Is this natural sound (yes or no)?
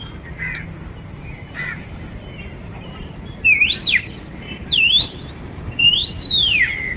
no